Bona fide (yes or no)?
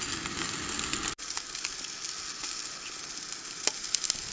yes